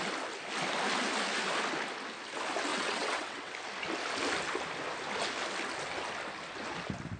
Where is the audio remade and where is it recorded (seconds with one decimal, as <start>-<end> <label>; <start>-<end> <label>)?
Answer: 0.0-2.7 recorded; 2.7-3.5 remade; 3.5-7.2 recorded